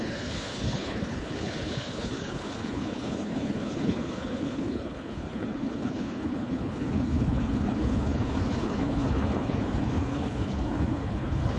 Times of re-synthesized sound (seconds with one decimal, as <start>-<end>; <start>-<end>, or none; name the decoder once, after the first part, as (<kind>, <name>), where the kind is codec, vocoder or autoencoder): 0.0-11.6 (codec, HILCodec)